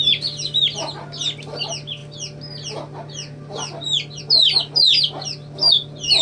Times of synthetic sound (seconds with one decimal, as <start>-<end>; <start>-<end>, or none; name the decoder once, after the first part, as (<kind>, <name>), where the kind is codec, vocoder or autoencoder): none